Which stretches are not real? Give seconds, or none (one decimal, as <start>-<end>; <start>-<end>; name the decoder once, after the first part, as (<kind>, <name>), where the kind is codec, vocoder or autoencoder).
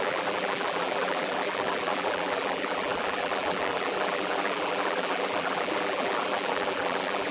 0.0-7.3 (vocoder, BigVGAN v2)